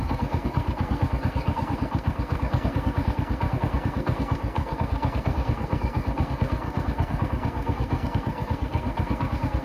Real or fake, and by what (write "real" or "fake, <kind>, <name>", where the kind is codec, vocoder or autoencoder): fake, codec, SNAC